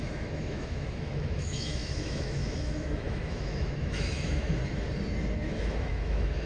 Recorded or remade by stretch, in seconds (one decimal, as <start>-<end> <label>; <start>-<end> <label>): 0.0-4.6 remade; 4.6-5.5 recorded; 5.5-6.5 remade

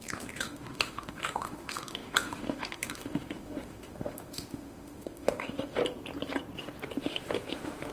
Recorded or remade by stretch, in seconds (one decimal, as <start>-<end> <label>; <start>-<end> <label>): 0.0-5.8 remade; 5.8-7.0 recorded; 7.0-7.9 remade